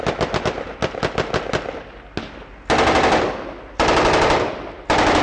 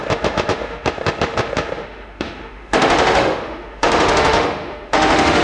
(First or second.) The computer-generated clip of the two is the second